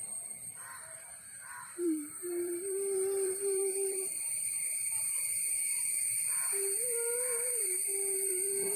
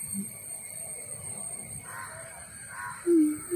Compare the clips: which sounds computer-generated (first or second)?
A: first